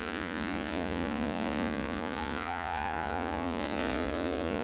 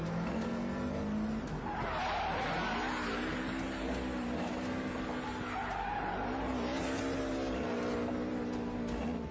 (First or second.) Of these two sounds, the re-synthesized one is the first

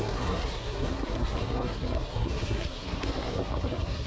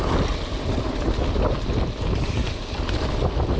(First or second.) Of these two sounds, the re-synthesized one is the first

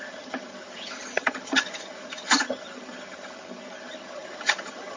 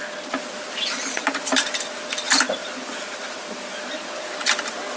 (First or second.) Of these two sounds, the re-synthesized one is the first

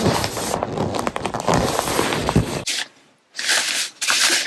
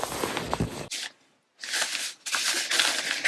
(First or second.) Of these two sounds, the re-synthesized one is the first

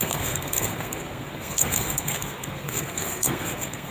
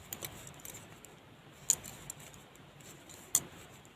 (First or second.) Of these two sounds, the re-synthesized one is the first